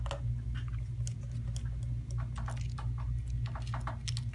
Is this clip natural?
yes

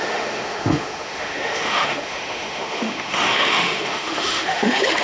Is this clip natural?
no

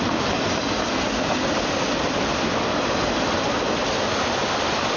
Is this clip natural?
yes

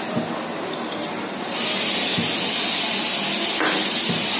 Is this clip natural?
yes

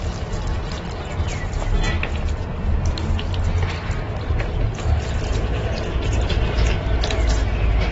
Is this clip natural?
yes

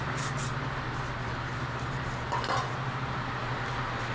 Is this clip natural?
yes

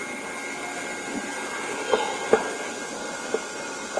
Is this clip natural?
yes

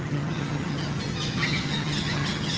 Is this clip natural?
no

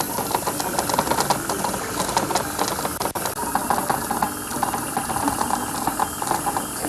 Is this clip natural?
yes